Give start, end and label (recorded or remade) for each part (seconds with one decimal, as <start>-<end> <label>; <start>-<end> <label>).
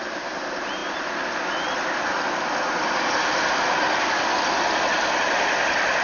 0.0-6.0 recorded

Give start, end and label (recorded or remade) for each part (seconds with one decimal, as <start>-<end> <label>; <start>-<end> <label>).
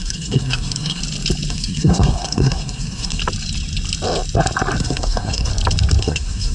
0.0-1.0 remade; 1.0-1.5 recorded; 1.5-3.2 remade; 3.2-4.8 recorded; 4.8-5.5 remade; 5.5-6.0 recorded; 6.0-6.5 remade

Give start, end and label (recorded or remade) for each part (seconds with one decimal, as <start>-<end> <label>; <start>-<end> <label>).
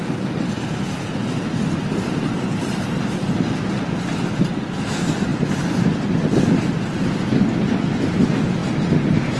0.0-5.3 recorded; 5.3-8.2 remade; 8.2-9.4 recorded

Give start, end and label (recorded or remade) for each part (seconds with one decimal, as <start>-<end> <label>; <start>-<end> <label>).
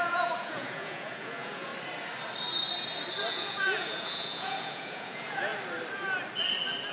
0.0-1.7 remade; 1.7-3.3 recorded; 3.3-5.5 remade; 5.5-6.9 recorded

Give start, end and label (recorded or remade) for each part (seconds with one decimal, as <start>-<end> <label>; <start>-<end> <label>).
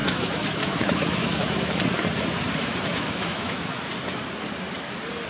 0.0-1.8 remade; 1.8-2.9 recorded; 2.9-3.9 remade; 3.9-5.3 recorded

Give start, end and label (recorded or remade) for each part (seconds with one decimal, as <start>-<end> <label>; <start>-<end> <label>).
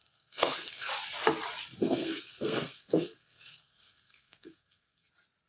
0.0-0.9 remade; 0.9-1.8 recorded; 1.8-5.1 remade; 5.1-5.5 recorded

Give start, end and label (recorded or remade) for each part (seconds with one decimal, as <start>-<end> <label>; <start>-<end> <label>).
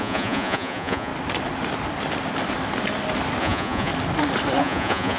0.0-1.1 remade; 1.1-3.4 recorded; 3.4-3.9 remade; 3.9-4.6 recorded; 4.6-5.2 remade